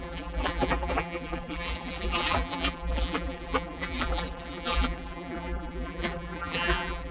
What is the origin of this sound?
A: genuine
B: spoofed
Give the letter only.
B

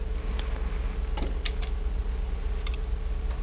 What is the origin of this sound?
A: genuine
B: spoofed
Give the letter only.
A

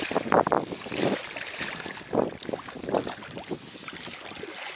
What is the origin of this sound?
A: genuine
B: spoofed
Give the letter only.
A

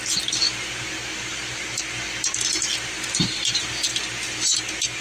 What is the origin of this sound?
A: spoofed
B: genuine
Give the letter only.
B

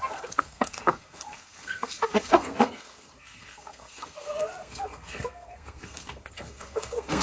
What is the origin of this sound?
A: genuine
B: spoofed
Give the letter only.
B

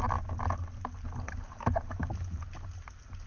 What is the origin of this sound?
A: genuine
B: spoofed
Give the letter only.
A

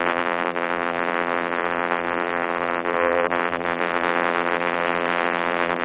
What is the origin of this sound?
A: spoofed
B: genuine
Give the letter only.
A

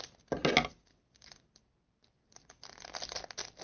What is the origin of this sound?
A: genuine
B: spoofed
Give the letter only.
A